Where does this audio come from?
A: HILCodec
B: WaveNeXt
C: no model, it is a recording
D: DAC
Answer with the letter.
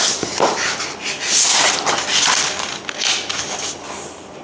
C